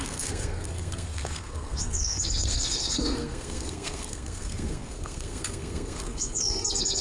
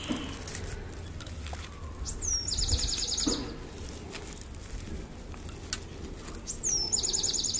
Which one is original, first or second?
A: second